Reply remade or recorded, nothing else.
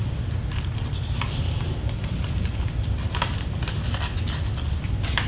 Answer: recorded